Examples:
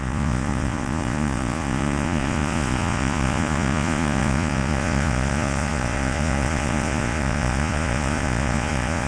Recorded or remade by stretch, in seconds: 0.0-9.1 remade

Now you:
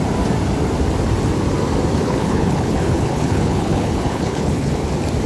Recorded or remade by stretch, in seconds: 0.0-2.0 recorded; 2.0-4.7 remade; 4.7-5.3 recorded

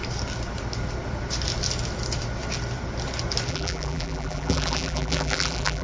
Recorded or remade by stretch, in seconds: 0.0-3.5 recorded; 3.5-5.8 remade